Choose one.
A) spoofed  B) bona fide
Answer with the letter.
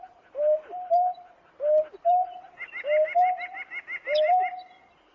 B